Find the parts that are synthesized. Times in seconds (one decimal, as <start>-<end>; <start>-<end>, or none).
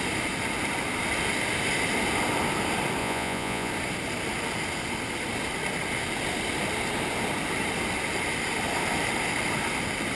3.0-3.7